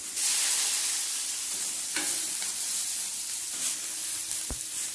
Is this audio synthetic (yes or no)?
yes